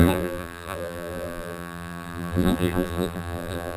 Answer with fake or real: fake